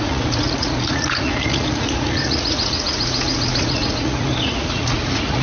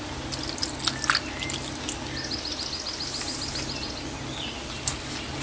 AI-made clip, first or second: first